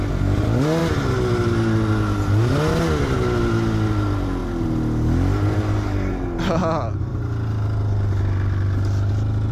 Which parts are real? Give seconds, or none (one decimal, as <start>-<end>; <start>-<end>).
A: 0.0-9.5